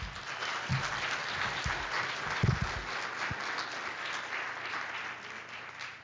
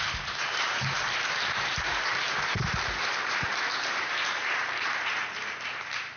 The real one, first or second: first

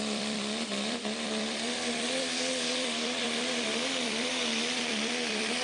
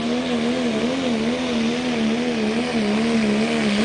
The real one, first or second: second